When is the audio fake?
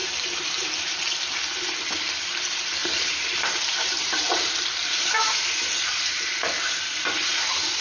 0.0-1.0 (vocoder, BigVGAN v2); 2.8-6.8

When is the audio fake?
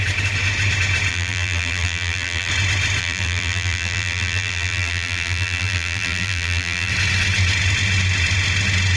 1.1-2.5 (vocoder, BigVGAN v2); 3.0-6.9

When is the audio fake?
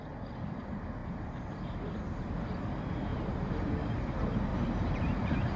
1.0-2.4 (vocoder, BigVGAN v2); 3.1-3.7; 4.5-5.6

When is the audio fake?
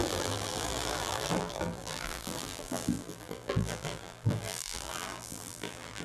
0.0-6.0 (vocoder, BigVGAN v2)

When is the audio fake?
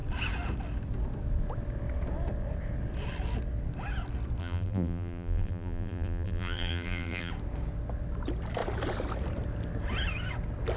4.4-7.3 (vocoder, BigVGAN v2)